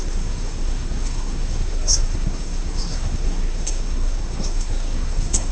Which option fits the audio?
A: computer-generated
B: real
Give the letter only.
A